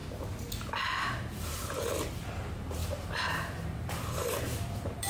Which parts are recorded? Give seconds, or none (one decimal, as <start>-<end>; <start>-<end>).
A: 0.0-0.7; 1.8-2.4